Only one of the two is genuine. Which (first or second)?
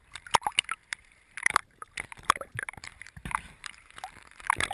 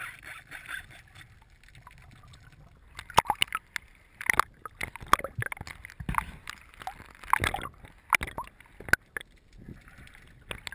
second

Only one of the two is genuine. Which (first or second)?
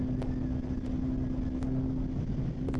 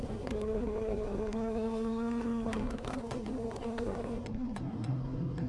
first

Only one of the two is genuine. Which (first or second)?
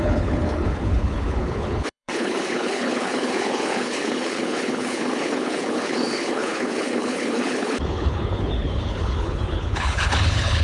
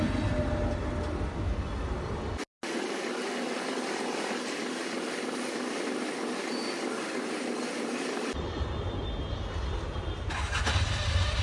second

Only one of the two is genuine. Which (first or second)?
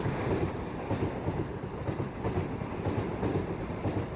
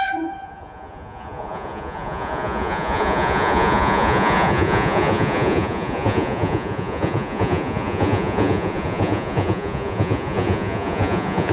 first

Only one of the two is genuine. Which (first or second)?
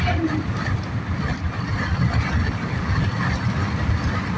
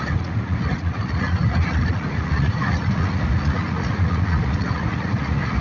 first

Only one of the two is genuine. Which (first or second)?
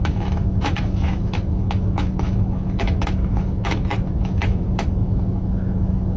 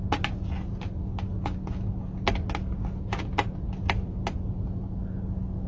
second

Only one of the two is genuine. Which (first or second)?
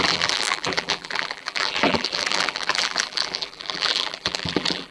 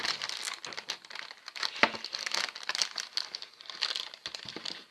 second